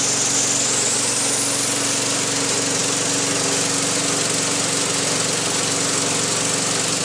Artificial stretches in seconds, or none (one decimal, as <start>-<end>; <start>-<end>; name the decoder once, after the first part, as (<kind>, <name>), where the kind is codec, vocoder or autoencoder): none